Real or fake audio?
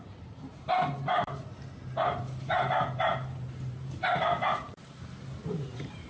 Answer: fake